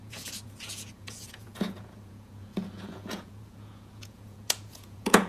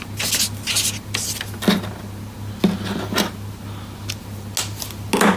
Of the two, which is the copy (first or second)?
first